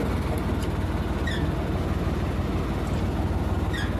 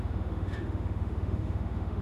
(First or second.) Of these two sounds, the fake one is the second